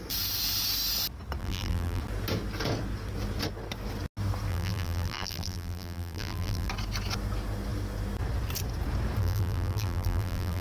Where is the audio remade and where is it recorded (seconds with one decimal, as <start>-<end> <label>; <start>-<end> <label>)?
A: 0.0-1.4 recorded; 1.4-2.0 remade; 2.0-4.5 recorded; 4.5-6.7 remade; 6.7-9.2 recorded; 9.2-10.6 remade